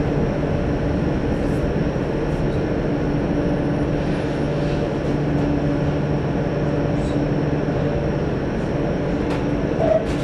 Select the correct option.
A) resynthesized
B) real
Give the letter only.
B